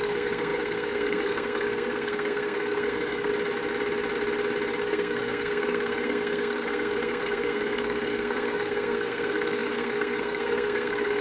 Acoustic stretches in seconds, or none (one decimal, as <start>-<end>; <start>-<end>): 3.3-4.8